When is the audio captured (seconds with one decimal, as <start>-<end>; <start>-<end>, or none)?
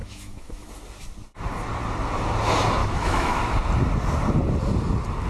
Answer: 0.7-2.8; 3.4-5.3